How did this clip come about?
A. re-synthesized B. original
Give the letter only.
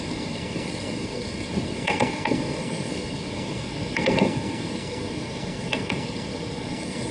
A